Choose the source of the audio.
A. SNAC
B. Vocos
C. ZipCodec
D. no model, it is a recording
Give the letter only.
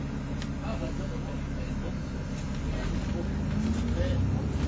D